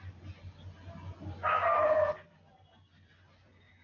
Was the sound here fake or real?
real